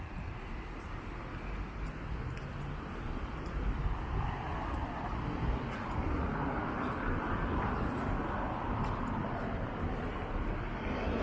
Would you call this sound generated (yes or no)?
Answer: no